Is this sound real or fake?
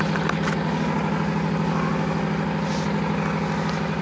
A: real